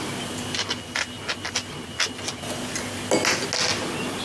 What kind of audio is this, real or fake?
real